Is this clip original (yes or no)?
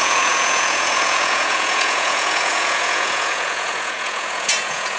no